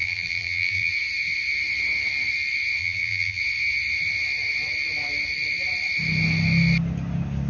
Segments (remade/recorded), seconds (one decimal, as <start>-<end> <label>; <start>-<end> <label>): 0.0-0.9 remade; 0.9-2.8 recorded; 2.8-3.4 remade; 3.4-7.5 recorded